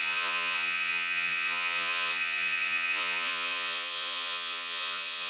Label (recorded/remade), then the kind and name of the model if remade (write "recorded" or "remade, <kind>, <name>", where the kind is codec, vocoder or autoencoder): remade, vocoder, Vocos